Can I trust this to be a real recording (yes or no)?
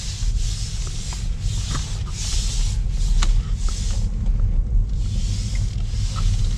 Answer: yes